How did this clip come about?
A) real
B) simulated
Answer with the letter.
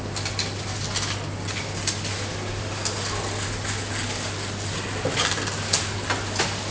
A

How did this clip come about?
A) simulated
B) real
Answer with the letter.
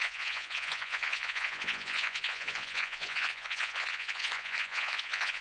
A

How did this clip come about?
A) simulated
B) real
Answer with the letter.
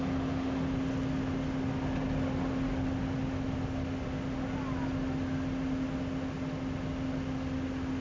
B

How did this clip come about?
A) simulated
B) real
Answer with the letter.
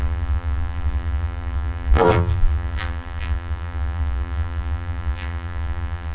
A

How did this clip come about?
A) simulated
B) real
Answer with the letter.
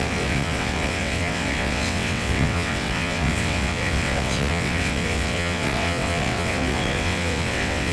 A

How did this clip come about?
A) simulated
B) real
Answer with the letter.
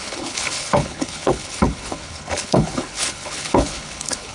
A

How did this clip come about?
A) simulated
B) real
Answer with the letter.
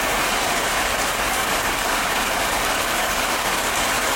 A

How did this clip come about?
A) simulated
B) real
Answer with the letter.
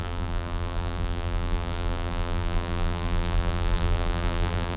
A